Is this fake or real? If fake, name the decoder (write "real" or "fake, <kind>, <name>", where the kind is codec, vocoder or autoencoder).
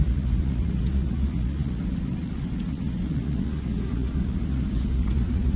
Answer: fake, vocoder, Vocos